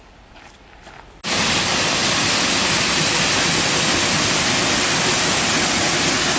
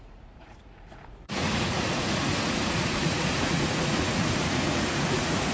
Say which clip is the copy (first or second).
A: second